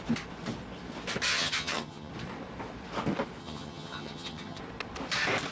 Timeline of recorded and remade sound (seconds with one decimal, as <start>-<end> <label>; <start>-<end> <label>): 0.0-1.3 recorded; 1.3-2.1 remade; 2.1-3.4 recorded; 3.4-4.6 remade; 4.6-5.5 recorded